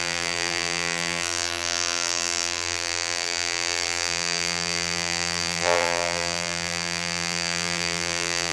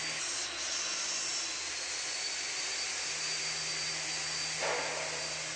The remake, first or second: first